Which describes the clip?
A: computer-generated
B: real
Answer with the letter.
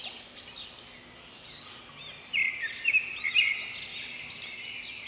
B